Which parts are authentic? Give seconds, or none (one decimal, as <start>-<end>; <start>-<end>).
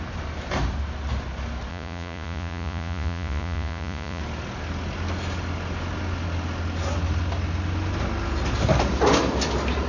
0.0-1.7; 4.2-9.9